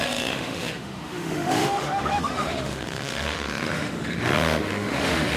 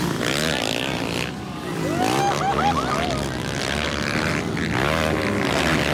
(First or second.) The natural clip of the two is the second